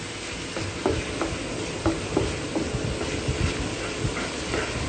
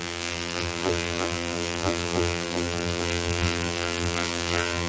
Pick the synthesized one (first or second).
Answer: second